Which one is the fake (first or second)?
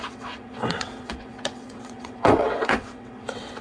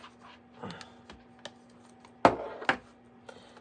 first